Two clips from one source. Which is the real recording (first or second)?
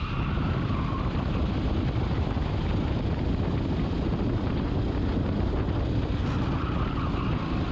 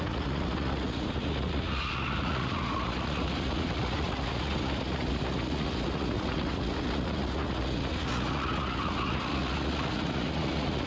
first